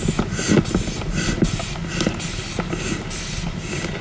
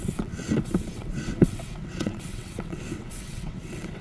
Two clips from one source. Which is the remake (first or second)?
second